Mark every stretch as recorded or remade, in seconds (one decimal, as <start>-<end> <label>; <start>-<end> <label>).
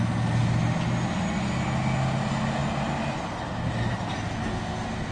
0.0-5.1 recorded